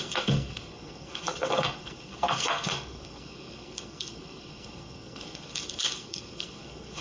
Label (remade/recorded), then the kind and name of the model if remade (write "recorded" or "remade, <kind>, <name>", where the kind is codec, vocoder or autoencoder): remade, codec, SNAC